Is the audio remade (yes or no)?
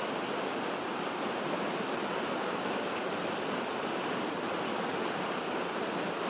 no